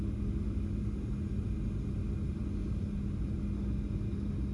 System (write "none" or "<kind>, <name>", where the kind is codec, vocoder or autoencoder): none